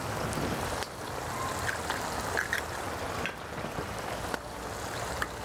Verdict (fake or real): real